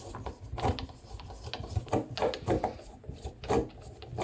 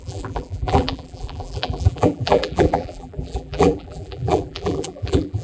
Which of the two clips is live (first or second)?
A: first